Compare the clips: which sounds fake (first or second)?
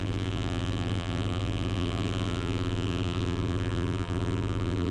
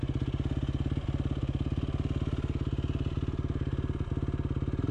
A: first